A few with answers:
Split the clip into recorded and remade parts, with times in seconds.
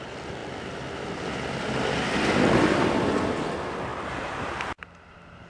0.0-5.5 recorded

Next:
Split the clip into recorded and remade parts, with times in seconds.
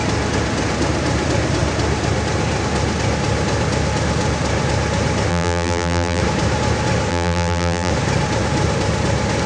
0.0-5.3 recorded; 5.3-6.2 remade; 6.2-7.1 recorded; 7.1-7.9 remade; 7.9-9.5 recorded